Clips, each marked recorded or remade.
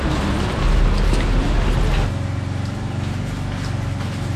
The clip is recorded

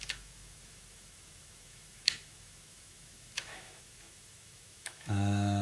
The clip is remade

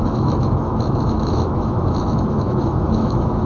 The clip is remade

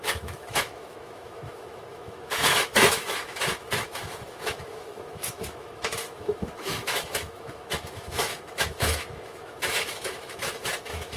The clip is remade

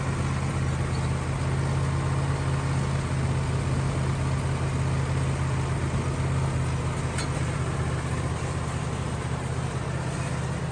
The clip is recorded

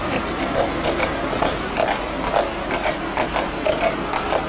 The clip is recorded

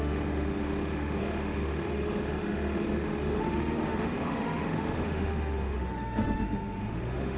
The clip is remade